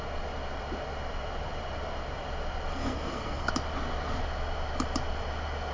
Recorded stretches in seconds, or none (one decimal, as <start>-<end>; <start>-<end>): 0.0-2.7; 3.5-5.7